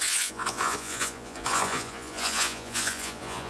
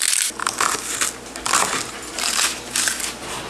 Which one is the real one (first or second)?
second